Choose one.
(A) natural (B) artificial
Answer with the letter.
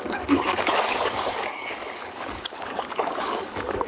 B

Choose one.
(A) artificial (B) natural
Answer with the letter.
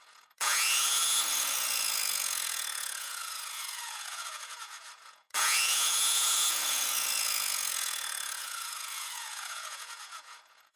A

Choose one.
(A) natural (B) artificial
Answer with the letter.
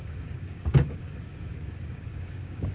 B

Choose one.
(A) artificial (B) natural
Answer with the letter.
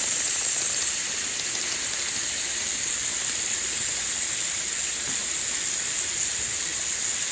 B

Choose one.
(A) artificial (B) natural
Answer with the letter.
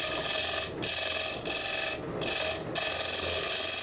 B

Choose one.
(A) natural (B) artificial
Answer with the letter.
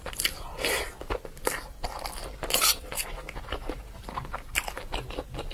A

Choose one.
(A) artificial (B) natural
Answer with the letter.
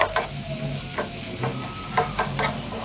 B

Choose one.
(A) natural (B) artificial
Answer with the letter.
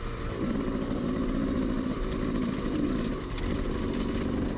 B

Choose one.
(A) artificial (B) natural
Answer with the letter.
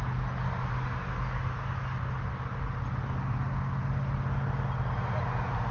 B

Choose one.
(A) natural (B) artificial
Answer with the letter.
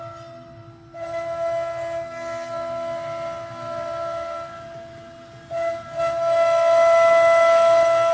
A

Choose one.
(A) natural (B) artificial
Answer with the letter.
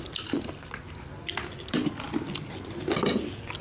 A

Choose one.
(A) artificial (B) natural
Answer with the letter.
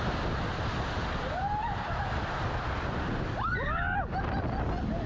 B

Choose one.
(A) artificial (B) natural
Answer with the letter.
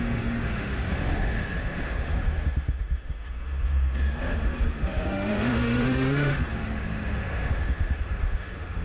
A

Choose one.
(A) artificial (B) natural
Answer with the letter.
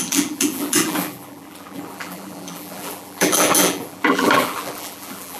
A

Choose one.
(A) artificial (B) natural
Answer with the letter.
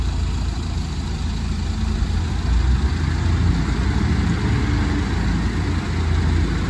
B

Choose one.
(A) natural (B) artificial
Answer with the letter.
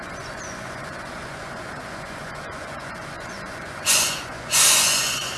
B